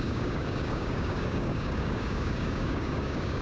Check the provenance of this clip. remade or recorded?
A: remade